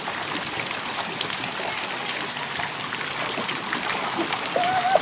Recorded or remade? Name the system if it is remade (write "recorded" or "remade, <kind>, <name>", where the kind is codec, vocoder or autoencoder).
recorded